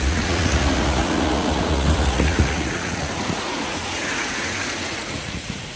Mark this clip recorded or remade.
remade